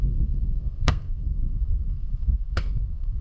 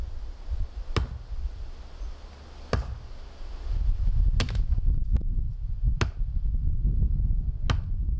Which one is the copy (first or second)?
first